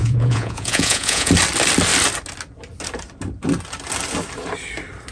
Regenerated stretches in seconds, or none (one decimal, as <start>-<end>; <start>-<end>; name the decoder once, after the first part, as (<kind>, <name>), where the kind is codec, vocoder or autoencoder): 0.0-1.3 (vocoder, Vocos)